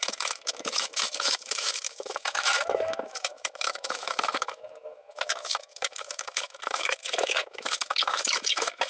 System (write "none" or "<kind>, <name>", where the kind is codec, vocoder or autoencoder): autoencoder, DAC-VAE